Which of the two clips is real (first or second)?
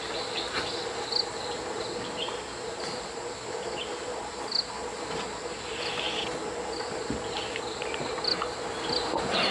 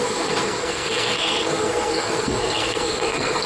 first